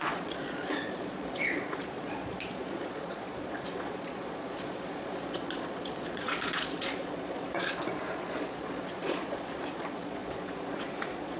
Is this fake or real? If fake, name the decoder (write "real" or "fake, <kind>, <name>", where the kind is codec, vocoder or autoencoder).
fake, vocoder, Vocos